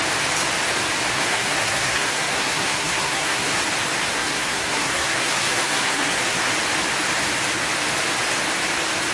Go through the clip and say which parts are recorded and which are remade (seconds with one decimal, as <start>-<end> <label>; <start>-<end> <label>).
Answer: 0.0-1.1 recorded; 1.1-3.6 remade; 3.6-4.1 recorded; 4.1-6.5 remade; 6.5-9.1 recorded